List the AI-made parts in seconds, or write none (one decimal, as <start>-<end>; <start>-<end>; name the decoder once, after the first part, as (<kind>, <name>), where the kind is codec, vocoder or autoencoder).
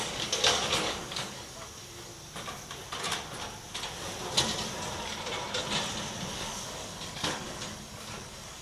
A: 0.0-2.1 (codec, DAC); 6.3-8.6